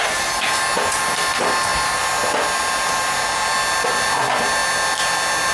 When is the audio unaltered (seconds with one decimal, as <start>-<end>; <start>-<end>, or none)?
0.0-5.5